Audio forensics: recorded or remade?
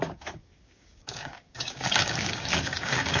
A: remade